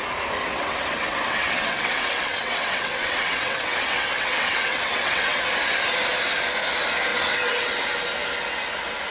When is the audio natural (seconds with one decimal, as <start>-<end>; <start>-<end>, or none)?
0.0-0.4; 5.4-7.1; 7.8-9.1

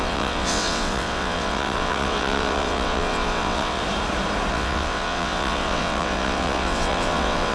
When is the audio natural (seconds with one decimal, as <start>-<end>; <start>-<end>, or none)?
3.8-4.5

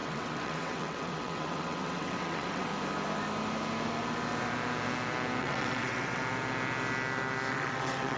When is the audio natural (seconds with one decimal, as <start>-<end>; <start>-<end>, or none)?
2.7-5.4; 6.2-7.5

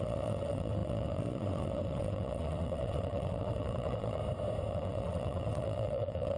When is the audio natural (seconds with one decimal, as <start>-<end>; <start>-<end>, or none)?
4.2-4.7

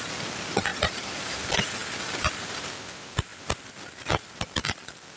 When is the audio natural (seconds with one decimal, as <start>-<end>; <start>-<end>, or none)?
0.0-5.2